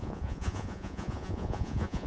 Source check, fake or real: fake